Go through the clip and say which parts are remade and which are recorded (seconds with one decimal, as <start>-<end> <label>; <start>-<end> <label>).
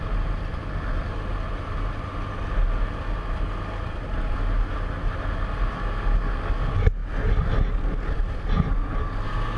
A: 0.0-9.6 recorded